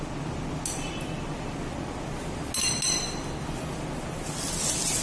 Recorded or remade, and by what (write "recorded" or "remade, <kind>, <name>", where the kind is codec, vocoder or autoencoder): recorded